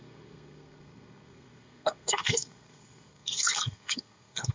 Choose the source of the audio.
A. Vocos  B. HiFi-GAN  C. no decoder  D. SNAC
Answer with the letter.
D